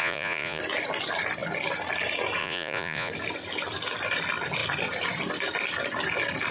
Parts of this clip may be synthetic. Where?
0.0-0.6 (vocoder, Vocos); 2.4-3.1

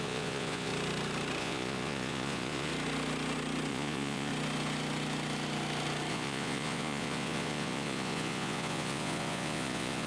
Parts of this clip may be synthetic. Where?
0.0-0.7 (vocoder, Vocos); 1.4-2.7; 3.7-4.3; 6.1-10.1

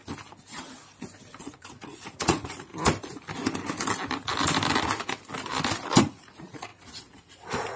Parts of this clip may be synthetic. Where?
1.4-2.7 (vocoder, Vocos); 6.0-7.8

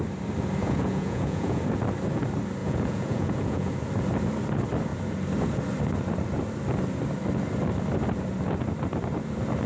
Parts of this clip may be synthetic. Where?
0.6-1.6 (vocoder, Vocos); 2.6-3.7

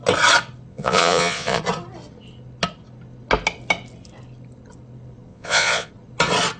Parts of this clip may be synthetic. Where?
0.7-1.6 (vocoder, Vocos); 5.3-5.9

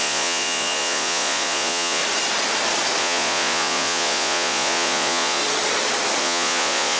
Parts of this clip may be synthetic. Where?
0.0-2.0 (vocoder, Vocos); 3.0-5.4; 6.2-7.0